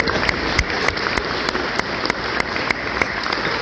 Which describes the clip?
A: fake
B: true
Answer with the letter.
B